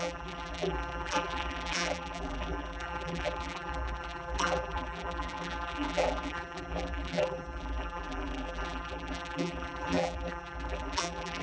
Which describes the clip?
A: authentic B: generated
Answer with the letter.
B